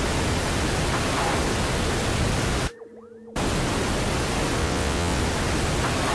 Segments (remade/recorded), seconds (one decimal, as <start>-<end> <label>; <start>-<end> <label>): 0.0-4.6 recorded; 4.6-5.2 remade; 5.2-6.1 recorded